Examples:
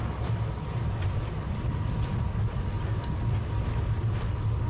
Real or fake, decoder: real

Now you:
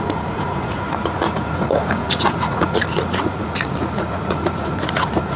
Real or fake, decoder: fake, vocoder, Vocos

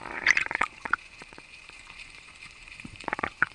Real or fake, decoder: fake, vocoder, Vocos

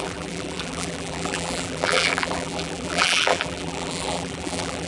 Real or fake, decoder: fake, vocoder, BigVGAN v2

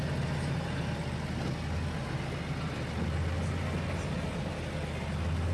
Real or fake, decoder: real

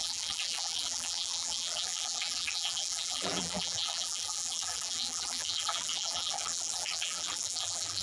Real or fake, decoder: fake, vocoder, BigVGAN v2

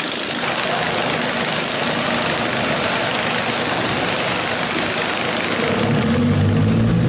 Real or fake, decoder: real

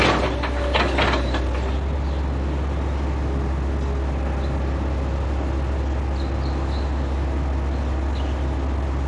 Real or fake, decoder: real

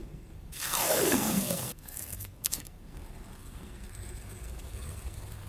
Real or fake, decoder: fake, codec, SNAC